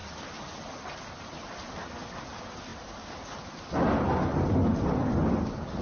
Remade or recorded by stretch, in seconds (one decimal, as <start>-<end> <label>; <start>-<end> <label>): 0.0-5.8 recorded